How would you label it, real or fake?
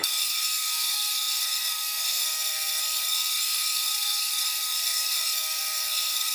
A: fake